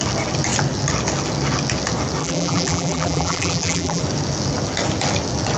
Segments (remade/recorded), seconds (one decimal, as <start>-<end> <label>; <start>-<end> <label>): 0.0-2.2 recorded; 2.2-4.0 remade; 4.0-5.6 recorded